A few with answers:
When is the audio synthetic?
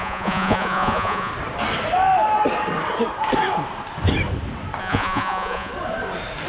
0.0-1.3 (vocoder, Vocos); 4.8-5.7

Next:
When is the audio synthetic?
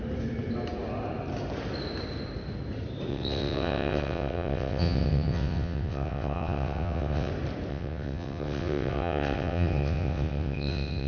3.1-7.3 (vocoder, WaveNeXt); 7.7-11.1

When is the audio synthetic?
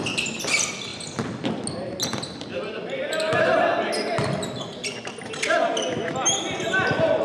none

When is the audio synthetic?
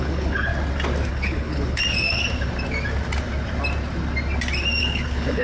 0.0-0.5 (codec, HILCodec); 1.1-1.8; 4.8-5.4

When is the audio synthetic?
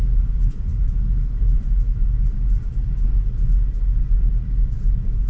none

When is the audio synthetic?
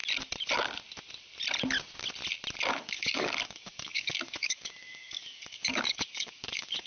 2.7-6.9 (codec, DAC)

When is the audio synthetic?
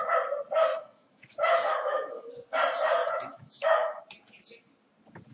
0.7-2.3 (autoencoder, DAC-VAE); 3.0-4.0